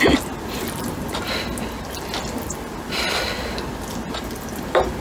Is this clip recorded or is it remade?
recorded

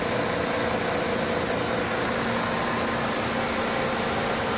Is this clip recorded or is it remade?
recorded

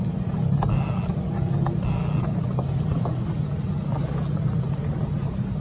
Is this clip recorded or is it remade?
recorded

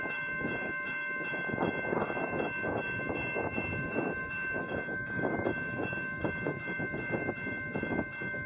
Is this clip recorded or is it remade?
remade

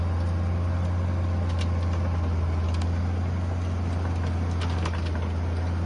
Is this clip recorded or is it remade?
recorded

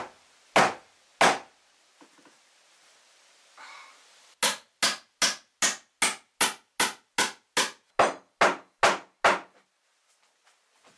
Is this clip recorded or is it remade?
recorded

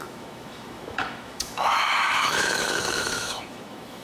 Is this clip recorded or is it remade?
remade